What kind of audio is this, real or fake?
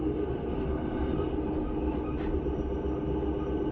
real